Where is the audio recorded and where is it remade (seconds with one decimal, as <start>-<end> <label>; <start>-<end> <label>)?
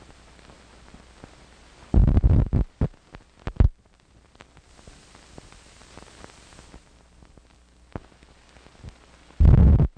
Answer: 0.0-2.0 recorded; 2.0-4.5 remade; 4.5-10.0 recorded